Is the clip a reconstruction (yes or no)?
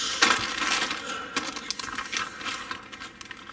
no